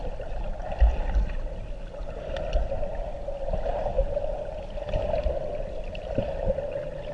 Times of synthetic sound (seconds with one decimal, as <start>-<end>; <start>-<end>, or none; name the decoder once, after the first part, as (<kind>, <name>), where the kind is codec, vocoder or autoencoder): none